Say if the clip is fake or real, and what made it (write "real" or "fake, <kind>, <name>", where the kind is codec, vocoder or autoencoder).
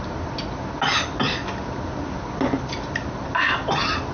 real